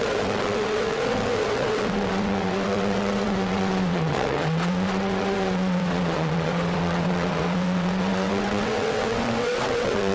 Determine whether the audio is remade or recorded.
remade